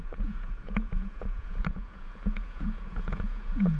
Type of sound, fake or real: fake